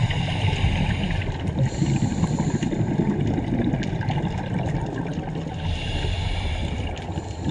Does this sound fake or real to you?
real